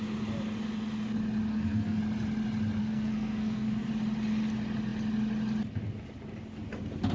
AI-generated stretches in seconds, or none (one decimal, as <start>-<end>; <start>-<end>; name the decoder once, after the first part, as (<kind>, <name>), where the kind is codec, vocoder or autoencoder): 1.5-2.0 (codec, SNAC); 2.8-3.9